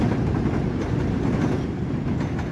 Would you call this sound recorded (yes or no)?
yes